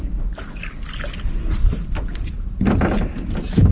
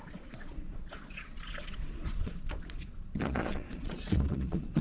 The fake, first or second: second